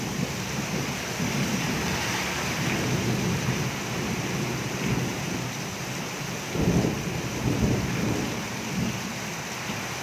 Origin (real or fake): fake